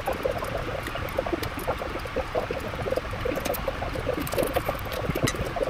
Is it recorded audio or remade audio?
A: recorded